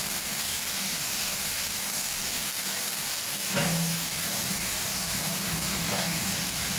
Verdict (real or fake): fake